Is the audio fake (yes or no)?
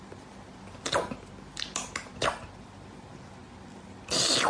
no